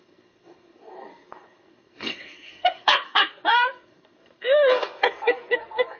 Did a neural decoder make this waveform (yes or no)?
yes